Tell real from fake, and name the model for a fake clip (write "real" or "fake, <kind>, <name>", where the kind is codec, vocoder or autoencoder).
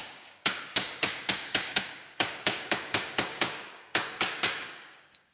fake, codec, DAC